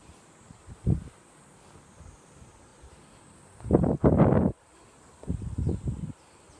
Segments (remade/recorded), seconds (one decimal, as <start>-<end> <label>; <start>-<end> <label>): 0.0-6.6 recorded